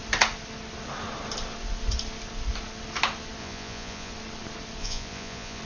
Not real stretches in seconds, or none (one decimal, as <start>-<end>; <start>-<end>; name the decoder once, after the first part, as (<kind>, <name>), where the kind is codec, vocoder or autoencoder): 3.4-4.1 (vocoder, Vocos); 4.8-5.6